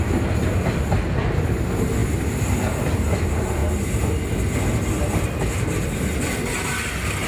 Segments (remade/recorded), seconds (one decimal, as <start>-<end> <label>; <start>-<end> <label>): 0.0-2.0 recorded; 2.0-3.2 remade; 3.2-7.3 recorded